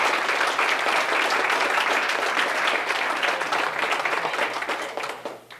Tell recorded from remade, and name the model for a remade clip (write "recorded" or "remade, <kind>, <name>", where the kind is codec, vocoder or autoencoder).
recorded